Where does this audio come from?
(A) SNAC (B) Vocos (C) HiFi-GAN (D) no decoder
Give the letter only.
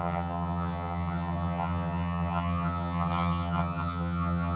C